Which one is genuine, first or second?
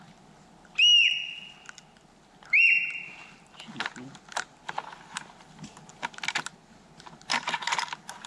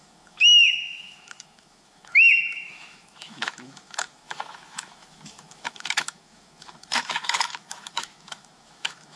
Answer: first